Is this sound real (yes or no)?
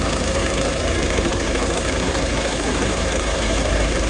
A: no